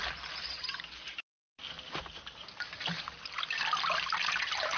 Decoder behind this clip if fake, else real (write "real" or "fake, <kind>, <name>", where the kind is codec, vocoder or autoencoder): real